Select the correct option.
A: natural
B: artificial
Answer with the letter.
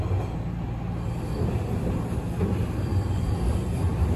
A